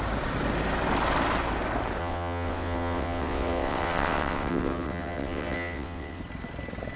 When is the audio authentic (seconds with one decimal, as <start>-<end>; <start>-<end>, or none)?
0.0-2.0; 6.2-7.0